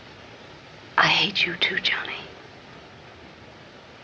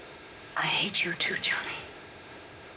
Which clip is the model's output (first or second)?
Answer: second